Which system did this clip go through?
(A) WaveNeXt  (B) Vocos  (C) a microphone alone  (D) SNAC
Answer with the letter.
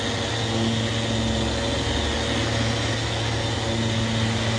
C